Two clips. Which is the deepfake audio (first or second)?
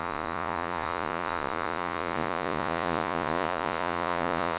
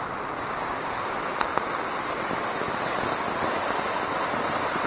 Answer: first